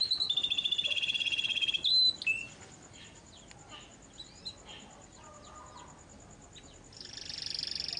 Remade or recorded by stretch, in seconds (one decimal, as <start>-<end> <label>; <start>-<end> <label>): 0.0-8.0 recorded

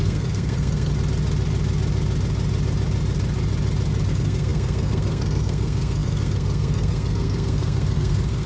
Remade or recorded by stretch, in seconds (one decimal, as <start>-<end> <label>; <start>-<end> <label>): 0.0-0.9 remade; 0.9-4.1 recorded; 4.1-8.5 remade

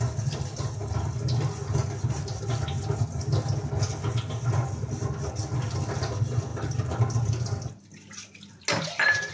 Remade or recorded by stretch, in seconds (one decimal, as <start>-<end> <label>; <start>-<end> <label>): 0.0-9.3 recorded

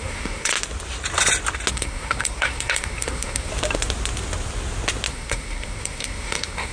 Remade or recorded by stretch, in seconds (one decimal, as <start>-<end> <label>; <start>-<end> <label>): 0.0-0.5 remade; 0.5-1.7 recorded; 1.7-3.5 remade; 3.5-5.1 recorded; 5.1-6.7 remade

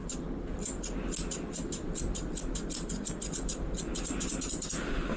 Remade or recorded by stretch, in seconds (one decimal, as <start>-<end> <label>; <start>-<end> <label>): 0.0-5.2 recorded

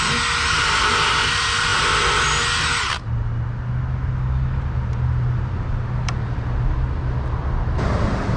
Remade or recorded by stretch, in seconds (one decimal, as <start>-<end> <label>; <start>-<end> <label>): 0.0-8.4 recorded

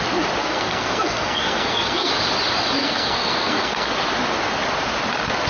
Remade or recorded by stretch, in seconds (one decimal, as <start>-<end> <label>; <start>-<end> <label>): 0.0-0.4 recorded; 0.4-2.1 remade; 2.1-2.8 recorded; 2.8-3.9 remade; 3.9-5.5 recorded

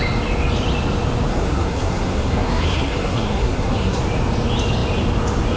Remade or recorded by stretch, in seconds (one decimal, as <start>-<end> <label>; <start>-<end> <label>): 0.0-1.3 recorded; 1.3-4.0 remade; 4.0-5.6 recorded